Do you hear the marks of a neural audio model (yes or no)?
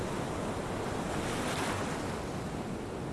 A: no